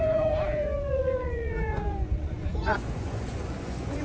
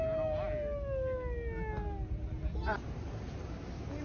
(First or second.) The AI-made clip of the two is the first